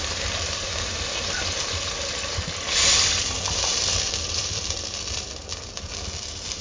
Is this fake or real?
fake